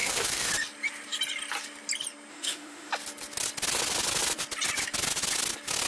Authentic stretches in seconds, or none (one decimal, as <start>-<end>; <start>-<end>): 0.5-2.3; 2.9-5.9